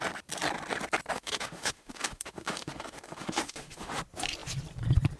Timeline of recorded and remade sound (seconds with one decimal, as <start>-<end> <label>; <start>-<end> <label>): 0.0-1.1 recorded; 1.1-3.9 remade; 3.9-5.2 recorded